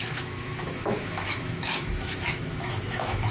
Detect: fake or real fake